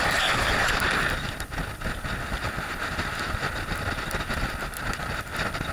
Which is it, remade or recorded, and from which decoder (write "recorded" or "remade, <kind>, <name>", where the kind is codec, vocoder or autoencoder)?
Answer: recorded